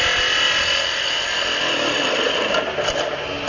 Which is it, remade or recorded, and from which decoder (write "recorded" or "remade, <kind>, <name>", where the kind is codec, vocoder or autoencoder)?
recorded